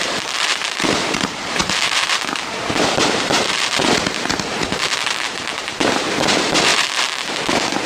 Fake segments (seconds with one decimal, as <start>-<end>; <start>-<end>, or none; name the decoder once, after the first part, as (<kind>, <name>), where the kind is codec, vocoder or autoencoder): 0.0-7.9 (vocoder, BigVGAN v2)